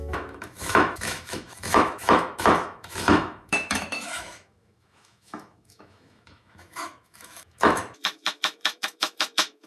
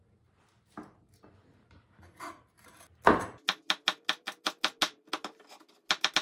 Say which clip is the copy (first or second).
first